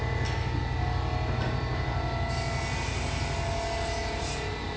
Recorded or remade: recorded